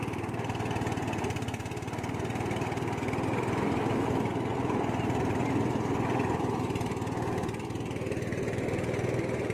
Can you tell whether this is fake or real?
real